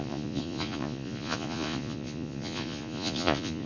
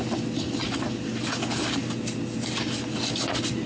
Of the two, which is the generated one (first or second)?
first